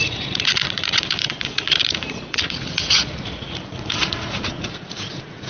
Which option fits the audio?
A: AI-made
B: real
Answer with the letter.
A